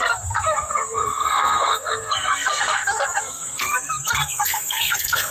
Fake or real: fake